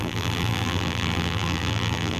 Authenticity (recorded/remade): remade